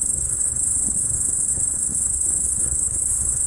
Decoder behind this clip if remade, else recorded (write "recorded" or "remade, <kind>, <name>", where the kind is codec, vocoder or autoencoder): remade, codec, SNAC